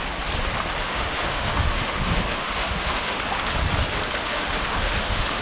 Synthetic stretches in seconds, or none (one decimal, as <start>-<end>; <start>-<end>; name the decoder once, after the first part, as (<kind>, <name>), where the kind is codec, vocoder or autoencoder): 0.9-3.2 (autoencoder, DAC-VAE); 4.2-5.4